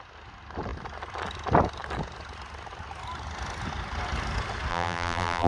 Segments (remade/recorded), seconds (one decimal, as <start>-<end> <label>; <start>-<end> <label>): 0.0-4.7 recorded; 4.7-5.5 remade

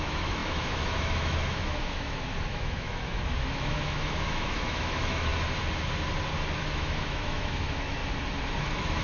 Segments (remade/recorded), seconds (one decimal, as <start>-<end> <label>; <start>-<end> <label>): 0.0-5.3 remade; 5.3-6.6 recorded; 6.6-8.0 remade; 8.0-8.6 recorded; 8.6-9.0 remade

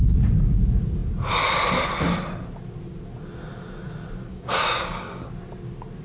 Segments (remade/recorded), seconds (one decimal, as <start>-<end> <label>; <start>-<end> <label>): 0.0-4.3 recorded; 4.3-5.2 remade; 5.2-6.0 recorded

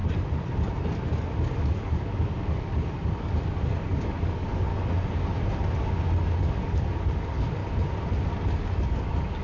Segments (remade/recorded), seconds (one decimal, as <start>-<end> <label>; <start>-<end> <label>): 0.0-1.6 recorded; 1.6-4.7 remade; 4.7-6.4 recorded; 6.4-7.6 remade; 7.6-8.6 recorded; 8.6-9.4 remade